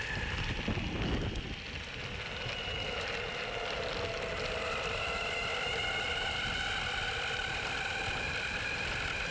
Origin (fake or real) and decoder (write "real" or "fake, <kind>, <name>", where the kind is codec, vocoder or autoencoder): real